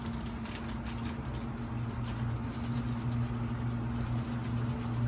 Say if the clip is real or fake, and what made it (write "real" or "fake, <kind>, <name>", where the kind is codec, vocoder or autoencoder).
real